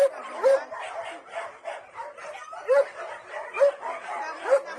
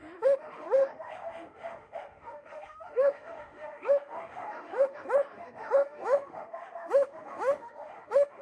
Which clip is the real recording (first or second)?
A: first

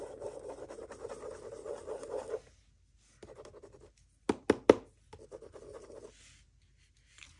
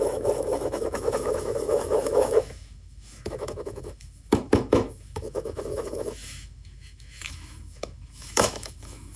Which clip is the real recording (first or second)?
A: first